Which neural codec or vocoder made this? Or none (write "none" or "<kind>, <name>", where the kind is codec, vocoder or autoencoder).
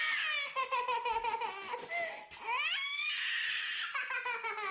none